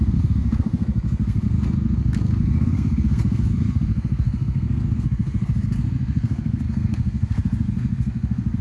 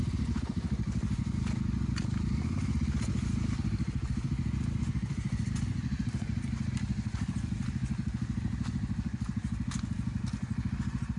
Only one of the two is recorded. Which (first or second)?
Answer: second